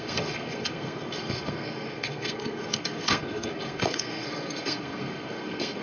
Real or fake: fake